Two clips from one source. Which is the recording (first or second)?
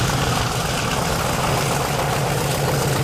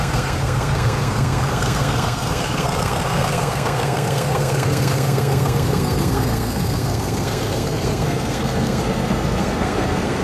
first